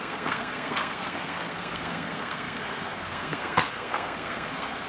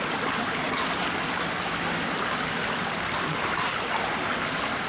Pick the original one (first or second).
second